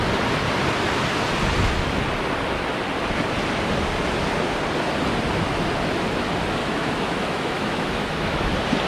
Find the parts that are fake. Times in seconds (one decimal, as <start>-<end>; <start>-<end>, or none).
6.6-8.5